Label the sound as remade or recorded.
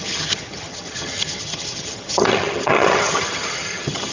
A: remade